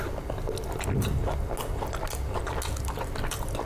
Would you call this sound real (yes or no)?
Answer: yes